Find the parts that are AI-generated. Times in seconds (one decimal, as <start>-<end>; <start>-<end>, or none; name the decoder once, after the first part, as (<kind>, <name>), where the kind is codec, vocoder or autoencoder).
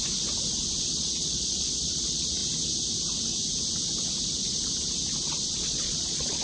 0.9-2.4 (vocoder, Vocos); 5.4-6.4